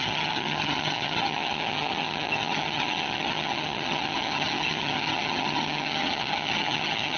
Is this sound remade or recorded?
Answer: remade